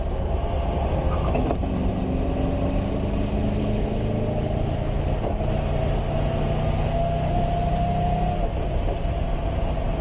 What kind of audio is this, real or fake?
real